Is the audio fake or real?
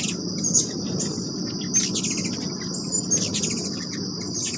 real